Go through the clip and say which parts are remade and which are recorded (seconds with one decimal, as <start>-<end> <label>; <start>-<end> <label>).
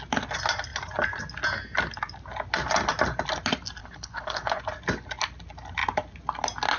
0.0-3.8 recorded; 3.8-4.6 remade; 4.6-6.8 recorded